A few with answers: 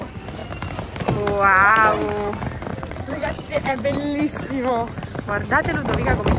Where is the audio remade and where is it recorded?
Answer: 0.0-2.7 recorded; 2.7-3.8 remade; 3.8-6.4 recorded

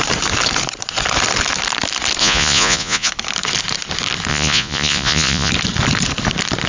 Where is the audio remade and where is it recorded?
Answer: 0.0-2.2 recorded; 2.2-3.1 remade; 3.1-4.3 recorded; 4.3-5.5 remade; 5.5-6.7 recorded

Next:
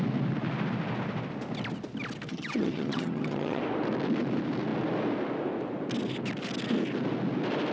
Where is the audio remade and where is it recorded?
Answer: 0.0-2.3 recorded; 2.3-3.6 remade; 3.6-7.7 recorded

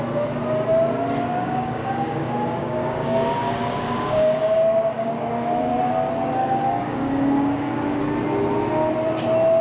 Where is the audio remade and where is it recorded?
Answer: 0.0-1.3 recorded; 1.3-5.8 remade; 5.8-6.4 recorded; 6.4-8.0 remade; 8.0-9.6 recorded

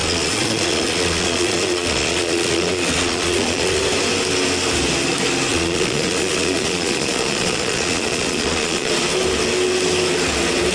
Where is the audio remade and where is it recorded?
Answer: 0.0-3.8 remade; 3.8-5.5 recorded; 5.5-8.9 remade; 8.9-10.7 recorded